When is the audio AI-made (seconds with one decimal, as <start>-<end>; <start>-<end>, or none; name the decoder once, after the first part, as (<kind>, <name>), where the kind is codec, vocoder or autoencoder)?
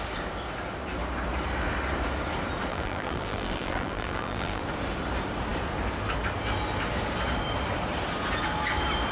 2.7-4.6 (vocoder, BigVGAN v2)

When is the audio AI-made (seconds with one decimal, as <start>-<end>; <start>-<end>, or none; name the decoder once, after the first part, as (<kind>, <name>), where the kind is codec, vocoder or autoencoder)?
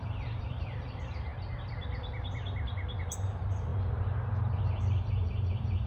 0.0-1.3 (vocoder, BigVGAN v2); 3.0-5.9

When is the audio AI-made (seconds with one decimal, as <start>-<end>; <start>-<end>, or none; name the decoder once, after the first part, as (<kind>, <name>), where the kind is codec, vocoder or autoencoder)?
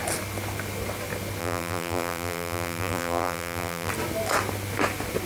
1.4-3.9 (vocoder, BigVGAN v2)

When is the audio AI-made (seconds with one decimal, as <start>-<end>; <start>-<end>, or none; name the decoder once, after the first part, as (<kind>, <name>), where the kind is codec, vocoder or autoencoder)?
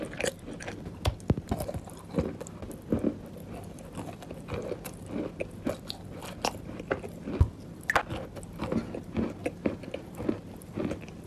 9.4-9.9 (vocoder, BigVGAN v2)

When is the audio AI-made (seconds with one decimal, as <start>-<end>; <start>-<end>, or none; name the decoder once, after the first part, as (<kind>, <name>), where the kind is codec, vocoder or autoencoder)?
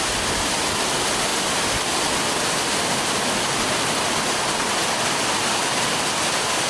none